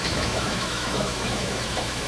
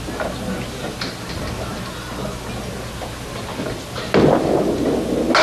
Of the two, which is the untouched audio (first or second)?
second